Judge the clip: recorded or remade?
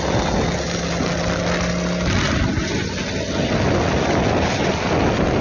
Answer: recorded